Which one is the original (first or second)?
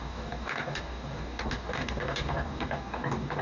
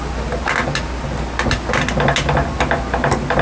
second